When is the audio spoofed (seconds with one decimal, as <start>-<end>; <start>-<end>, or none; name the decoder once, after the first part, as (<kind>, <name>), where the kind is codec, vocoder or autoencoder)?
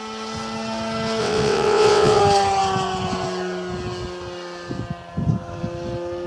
1.2-2.2 (vocoder, WaveNeXt)